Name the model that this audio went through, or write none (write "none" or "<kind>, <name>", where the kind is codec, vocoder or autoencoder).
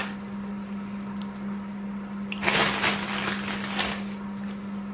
none